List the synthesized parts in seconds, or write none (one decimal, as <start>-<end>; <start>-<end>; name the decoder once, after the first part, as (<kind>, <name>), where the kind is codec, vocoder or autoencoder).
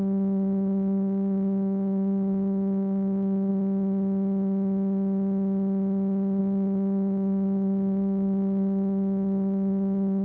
0.0-3.5 (codec, DAC); 6.4-10.2